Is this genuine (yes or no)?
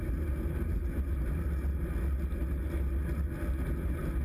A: yes